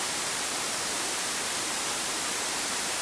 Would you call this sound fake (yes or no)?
yes